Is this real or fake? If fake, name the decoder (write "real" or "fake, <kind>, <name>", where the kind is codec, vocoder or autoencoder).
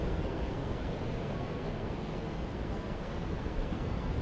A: fake, codec, SNAC